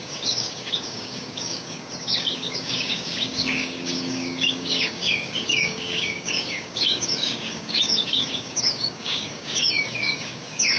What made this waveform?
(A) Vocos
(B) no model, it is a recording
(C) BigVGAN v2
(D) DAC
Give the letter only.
D